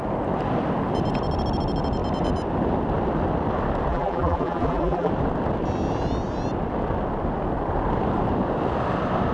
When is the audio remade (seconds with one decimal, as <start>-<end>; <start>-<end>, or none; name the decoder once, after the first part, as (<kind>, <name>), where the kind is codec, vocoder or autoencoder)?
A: 3.9-5.1 (vocoder, BigVGAN v2)